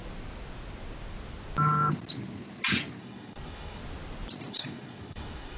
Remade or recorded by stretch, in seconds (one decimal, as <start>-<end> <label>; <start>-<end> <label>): 0.0-3.0 recorded; 3.0-3.8 remade; 3.8-4.5 recorded; 4.5-5.6 remade